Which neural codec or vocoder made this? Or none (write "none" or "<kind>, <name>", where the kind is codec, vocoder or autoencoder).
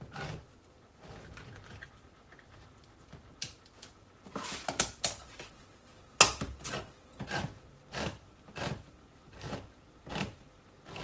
none